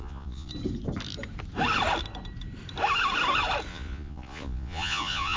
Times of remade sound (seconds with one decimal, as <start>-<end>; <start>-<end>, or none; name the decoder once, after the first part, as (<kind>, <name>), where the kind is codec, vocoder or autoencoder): 0.0-0.5 (vocoder, Vocos); 3.7-5.4